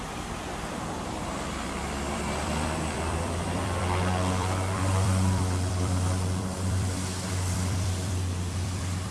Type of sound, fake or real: fake